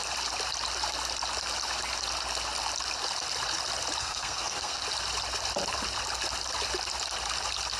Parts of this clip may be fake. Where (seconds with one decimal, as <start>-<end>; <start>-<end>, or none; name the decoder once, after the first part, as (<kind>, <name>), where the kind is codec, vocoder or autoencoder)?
4.0-4.8 (codec, SNAC)